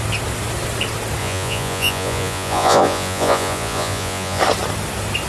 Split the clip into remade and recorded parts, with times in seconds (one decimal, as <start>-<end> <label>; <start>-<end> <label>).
0.0-1.2 recorded; 1.2-4.4 remade; 4.4-5.3 recorded